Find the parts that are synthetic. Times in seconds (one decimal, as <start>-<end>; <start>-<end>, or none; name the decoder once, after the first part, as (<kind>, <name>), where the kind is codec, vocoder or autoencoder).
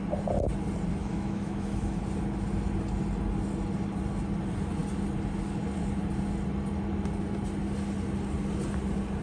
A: 1.0-2.0 (autoencoder, DAC-VAE)